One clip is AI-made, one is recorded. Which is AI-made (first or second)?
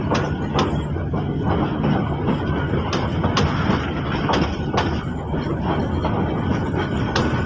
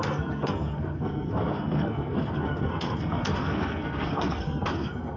second